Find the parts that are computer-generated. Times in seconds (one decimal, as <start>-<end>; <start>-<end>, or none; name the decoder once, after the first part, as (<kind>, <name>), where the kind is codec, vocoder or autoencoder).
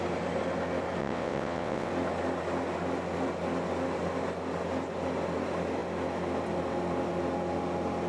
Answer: 1.0-1.9 (vocoder, WaveNeXt)